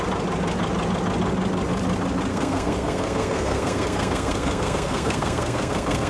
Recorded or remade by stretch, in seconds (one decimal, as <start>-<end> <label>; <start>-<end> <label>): 0.0-2.3 recorded; 2.3-6.1 remade